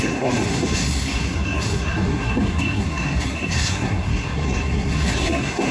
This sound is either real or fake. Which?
fake